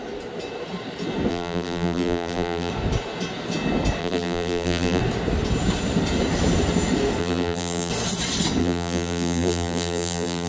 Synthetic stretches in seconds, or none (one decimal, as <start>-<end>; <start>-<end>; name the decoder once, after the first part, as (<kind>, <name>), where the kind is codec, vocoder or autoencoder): 1.3-2.7 (vocoder, BigVGAN v2); 4.0-5.0; 7.2-7.9; 8.6-10.5